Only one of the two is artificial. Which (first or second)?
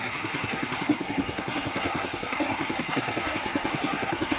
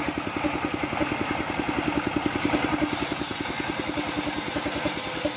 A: first